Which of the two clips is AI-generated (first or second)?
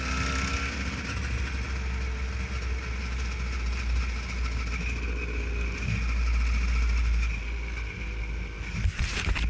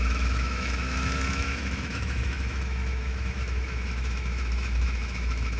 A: second